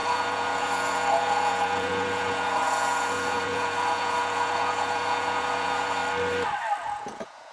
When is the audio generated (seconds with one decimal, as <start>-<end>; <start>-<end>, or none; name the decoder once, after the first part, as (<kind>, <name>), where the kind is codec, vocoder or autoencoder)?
0.0-6.0 (vocoder, Vocos); 6.8-7.5